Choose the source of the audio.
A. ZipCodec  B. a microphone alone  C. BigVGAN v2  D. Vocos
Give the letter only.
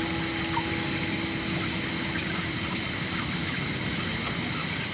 B